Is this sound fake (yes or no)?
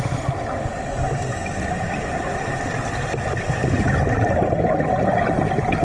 no